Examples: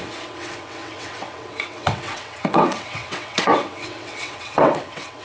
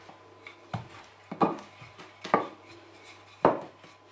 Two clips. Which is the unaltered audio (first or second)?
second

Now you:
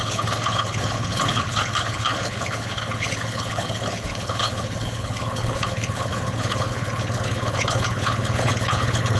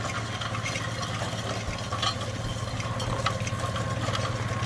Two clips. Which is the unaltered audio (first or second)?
second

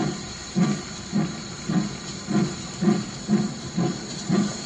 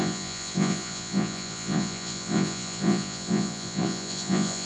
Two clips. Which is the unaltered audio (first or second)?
first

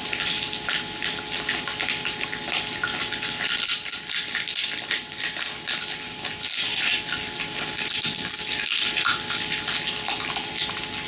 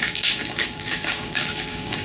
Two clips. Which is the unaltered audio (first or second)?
first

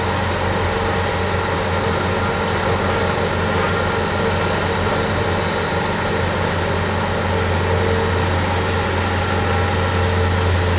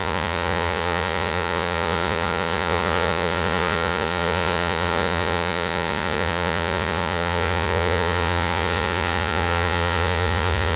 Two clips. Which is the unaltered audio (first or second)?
first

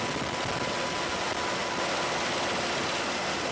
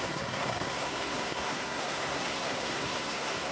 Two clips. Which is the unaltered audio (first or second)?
first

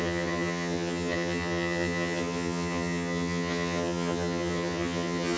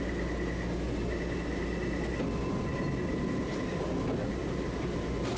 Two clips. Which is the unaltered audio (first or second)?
second